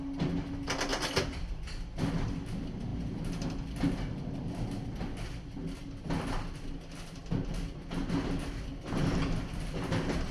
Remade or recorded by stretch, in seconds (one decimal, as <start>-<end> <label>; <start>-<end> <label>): 0.0-0.9 recorded; 0.9-1.6 remade; 1.6-10.3 recorded